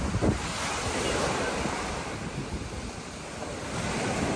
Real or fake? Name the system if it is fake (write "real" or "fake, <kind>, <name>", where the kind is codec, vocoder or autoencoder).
real